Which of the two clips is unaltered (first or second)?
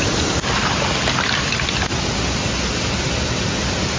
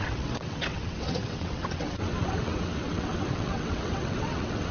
first